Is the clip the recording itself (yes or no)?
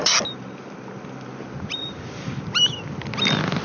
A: no